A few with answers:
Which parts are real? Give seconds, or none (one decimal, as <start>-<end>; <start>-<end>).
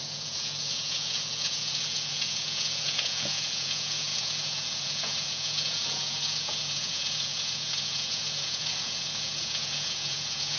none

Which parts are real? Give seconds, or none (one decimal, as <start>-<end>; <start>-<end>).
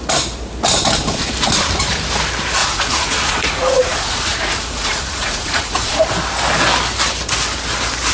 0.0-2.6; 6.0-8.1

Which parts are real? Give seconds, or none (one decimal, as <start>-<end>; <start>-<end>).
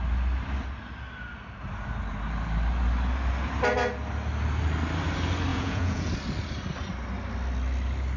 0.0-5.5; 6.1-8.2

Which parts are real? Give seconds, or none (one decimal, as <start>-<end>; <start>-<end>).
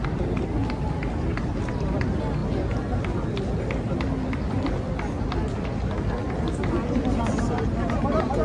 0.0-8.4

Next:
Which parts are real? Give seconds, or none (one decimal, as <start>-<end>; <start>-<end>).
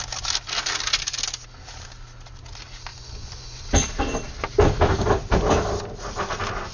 0.0-2.9; 3.6-6.7